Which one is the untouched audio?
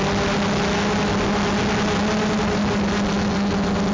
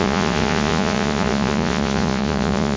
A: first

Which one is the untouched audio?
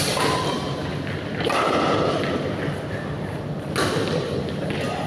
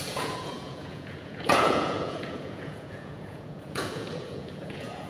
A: first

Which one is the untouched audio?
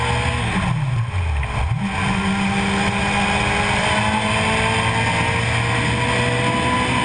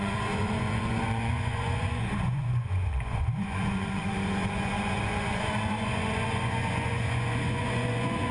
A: first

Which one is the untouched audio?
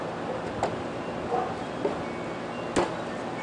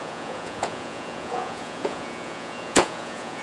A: first